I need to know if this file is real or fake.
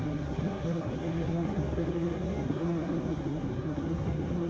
fake